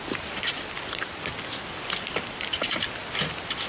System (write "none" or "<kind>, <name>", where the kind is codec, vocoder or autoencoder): none